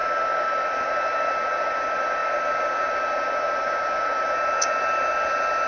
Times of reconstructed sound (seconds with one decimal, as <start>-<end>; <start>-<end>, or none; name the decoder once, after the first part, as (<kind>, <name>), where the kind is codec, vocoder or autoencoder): none